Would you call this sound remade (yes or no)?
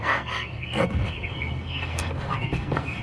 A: yes